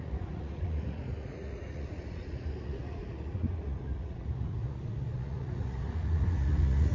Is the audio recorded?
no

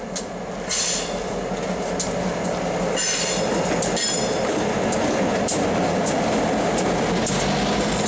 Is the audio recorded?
yes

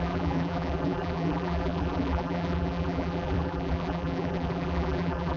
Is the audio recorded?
no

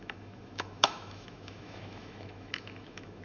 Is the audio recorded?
no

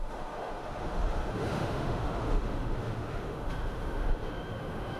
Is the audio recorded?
no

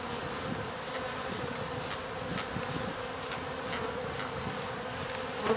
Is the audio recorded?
yes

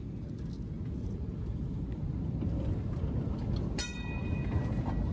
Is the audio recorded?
yes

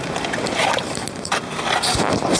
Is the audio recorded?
yes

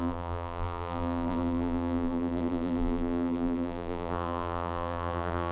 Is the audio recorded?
no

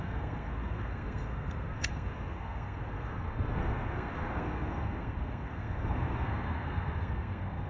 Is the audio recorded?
no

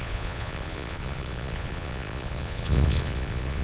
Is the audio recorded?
no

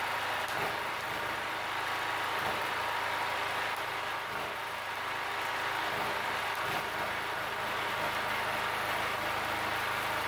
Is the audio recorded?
yes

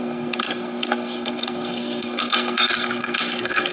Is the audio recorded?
no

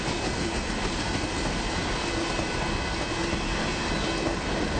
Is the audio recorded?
yes